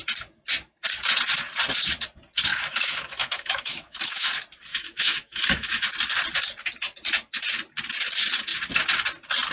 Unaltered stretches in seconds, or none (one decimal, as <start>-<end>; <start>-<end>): 0.0-2.5; 4.3-4.7; 5.9-9.5